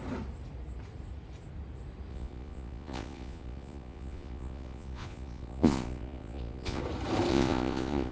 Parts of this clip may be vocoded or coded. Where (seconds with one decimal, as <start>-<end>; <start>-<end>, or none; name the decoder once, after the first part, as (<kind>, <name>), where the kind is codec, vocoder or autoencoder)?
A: 2.1-6.8 (vocoder, Vocos); 7.3-8.1